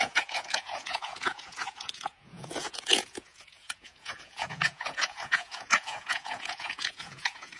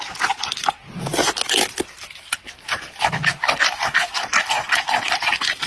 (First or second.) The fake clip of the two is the first